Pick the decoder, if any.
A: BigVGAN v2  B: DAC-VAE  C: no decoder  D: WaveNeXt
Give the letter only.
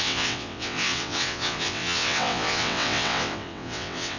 D